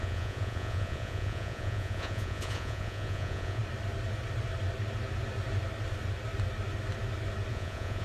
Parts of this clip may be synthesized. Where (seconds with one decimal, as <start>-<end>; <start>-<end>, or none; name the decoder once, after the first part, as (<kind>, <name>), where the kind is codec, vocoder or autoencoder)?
0.0-3.6 (vocoder, Vocos); 7.5-8.0